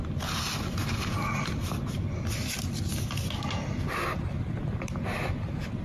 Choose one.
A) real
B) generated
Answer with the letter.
A